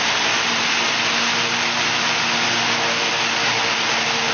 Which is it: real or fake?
real